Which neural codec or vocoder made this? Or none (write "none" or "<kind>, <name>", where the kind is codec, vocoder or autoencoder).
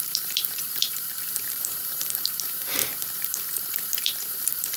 vocoder, BigVGAN v2